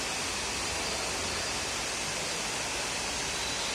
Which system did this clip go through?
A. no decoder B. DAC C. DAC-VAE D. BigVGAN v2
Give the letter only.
A